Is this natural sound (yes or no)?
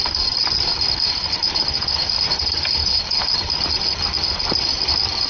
yes